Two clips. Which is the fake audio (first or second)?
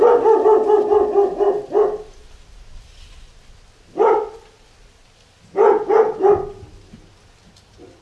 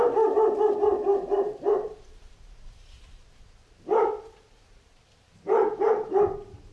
second